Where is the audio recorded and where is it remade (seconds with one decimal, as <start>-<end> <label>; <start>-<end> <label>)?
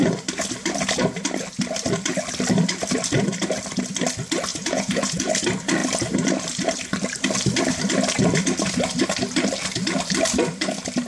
0.0-4.5 recorded; 4.5-5.3 remade; 5.3-11.1 recorded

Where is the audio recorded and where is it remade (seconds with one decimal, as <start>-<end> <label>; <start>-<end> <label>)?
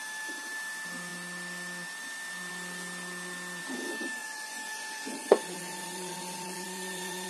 0.0-4.2 recorded; 4.2-7.3 remade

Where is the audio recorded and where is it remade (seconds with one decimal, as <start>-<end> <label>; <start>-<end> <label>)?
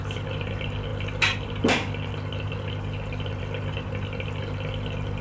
0.0-5.2 recorded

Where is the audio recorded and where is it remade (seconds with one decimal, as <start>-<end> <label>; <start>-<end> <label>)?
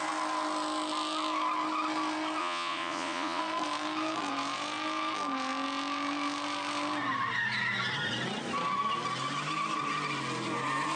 0.0-2.4 recorded; 2.4-3.4 remade; 3.4-11.0 recorded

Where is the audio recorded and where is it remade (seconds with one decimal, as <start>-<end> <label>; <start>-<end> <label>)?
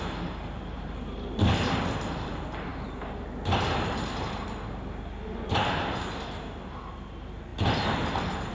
0.0-8.5 recorded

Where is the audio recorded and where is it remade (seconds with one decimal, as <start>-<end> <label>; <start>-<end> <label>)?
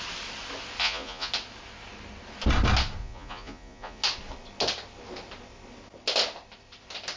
0.0-0.8 recorded; 0.8-1.3 remade; 1.3-3.0 recorded; 3.0-4.0 remade; 4.0-7.2 recorded